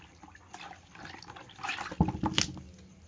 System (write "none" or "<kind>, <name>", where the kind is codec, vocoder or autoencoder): none